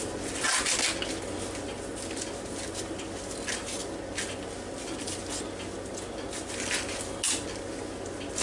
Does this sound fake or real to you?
real